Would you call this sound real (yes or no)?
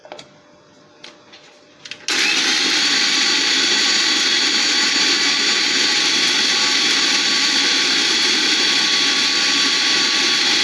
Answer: yes